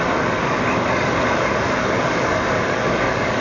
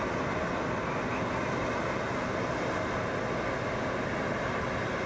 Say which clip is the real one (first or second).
second